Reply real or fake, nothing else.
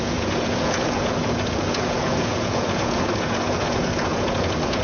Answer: fake